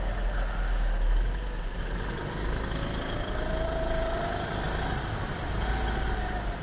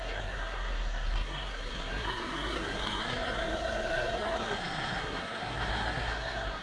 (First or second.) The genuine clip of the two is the first